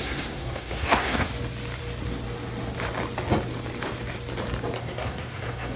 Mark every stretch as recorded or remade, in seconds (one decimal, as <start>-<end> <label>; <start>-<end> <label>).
0.0-1.3 remade; 1.3-4.8 recorded; 4.8-5.8 remade